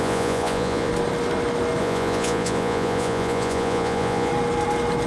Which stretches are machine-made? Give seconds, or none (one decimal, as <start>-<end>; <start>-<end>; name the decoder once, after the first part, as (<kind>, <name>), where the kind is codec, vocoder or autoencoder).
0.0-0.9 (vocoder, Vocos); 1.8-4.3